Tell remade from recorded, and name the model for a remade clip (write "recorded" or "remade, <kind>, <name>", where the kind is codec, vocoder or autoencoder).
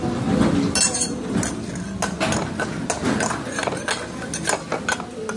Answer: recorded